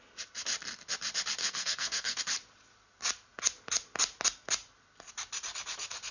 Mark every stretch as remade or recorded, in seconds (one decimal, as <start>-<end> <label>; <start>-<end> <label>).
0.0-1.4 recorded; 1.4-2.2 remade; 2.2-6.1 recorded